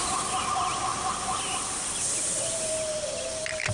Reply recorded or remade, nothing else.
recorded